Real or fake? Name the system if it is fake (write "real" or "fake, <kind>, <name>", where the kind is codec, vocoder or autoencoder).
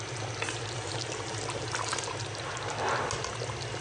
real